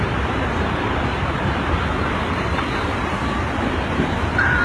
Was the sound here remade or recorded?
remade